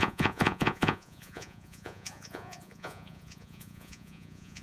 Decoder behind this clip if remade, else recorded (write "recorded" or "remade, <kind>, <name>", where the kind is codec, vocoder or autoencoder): remade, vocoder, Vocos